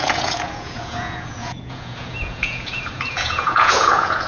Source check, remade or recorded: remade